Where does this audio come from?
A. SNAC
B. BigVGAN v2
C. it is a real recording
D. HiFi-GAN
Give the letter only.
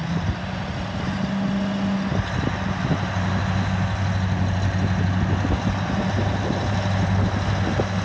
C